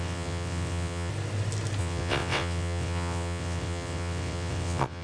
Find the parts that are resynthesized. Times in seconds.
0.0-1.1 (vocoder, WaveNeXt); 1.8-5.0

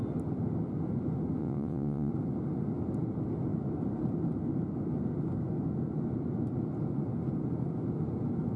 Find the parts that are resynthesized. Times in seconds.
1.4-2.1 (vocoder, WaveNeXt)

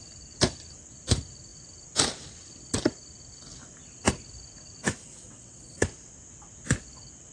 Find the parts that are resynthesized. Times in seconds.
5.0-5.8 (vocoder, WaveNeXt)

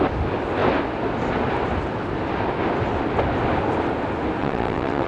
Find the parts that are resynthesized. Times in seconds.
4.4-5.1 (vocoder, WaveNeXt)

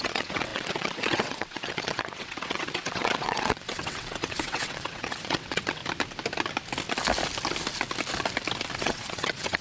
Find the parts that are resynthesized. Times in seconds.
0.0-5.8 (vocoder, WaveNeXt); 8.8-9.6

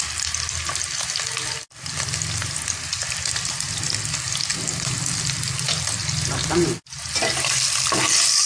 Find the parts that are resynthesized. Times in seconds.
none

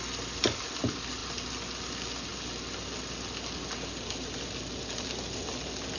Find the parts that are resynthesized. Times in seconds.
none

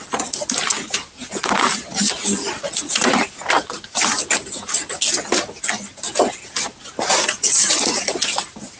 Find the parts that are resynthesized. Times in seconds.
none